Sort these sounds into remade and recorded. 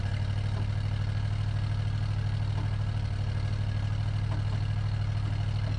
recorded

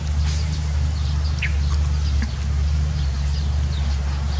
recorded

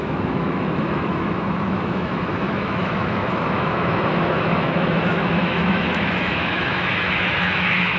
remade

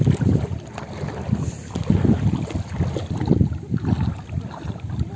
recorded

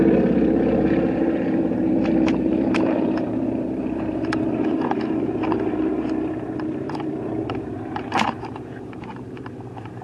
remade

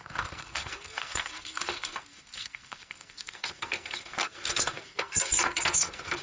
remade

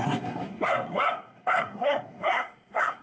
remade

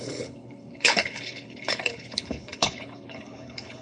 remade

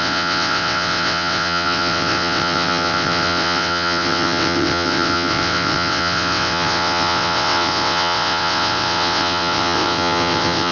remade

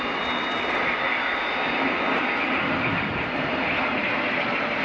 recorded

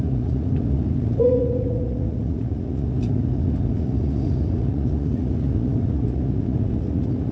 remade